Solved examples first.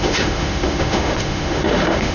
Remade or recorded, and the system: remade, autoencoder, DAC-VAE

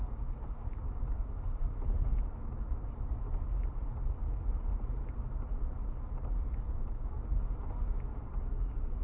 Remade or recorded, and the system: recorded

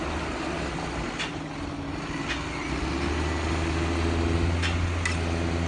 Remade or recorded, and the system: recorded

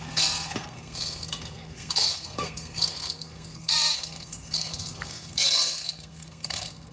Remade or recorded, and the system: remade, codec, SNAC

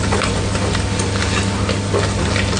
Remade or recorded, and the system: recorded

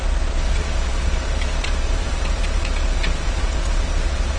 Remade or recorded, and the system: remade, vocoder, Vocos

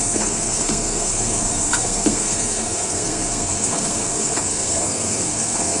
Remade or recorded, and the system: remade, codec, SNAC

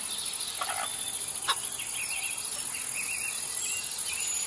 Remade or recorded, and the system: recorded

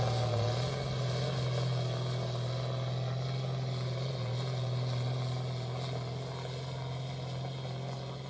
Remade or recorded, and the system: recorded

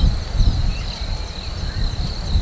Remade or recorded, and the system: recorded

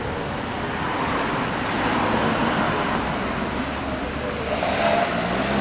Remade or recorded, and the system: recorded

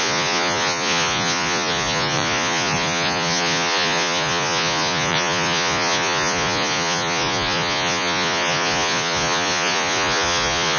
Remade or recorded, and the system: remade, vocoder, Vocos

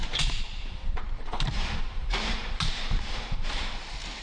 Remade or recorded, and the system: remade, vocoder, BigVGAN v2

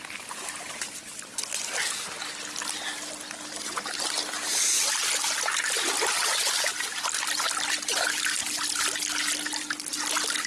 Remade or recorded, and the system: recorded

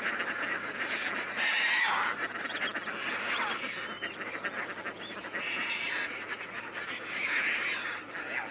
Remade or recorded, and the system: recorded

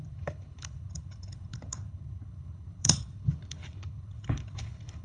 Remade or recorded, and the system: remade, codec, HILCodec